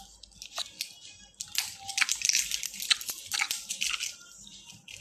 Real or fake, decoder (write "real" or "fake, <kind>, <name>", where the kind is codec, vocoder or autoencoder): real